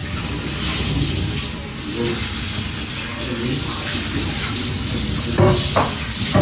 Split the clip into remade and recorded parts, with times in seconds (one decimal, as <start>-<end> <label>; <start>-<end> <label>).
0.0-6.4 recorded